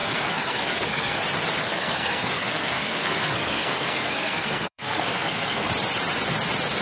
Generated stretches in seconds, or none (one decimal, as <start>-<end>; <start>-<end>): 0.0-1.2; 1.6-5.7